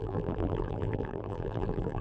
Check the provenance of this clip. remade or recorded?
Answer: remade